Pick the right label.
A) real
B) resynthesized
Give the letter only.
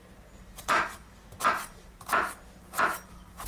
B